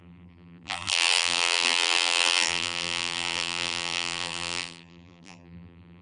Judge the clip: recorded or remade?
remade